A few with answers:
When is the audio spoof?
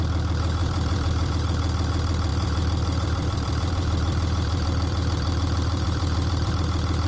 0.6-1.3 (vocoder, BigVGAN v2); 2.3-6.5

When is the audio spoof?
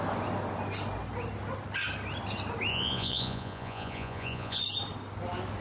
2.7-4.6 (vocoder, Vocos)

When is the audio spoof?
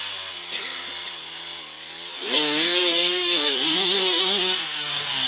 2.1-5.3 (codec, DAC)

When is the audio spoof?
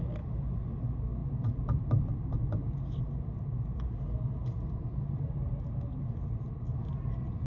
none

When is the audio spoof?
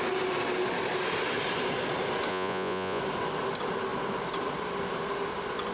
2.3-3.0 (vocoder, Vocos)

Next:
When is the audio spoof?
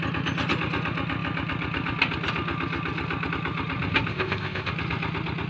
4.1-4.7 (codec, ZipCodec)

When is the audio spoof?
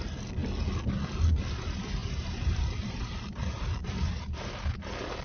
2.0-5.2 (vocoder, BigVGAN v2)